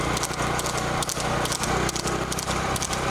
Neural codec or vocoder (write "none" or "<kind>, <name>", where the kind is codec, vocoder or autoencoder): none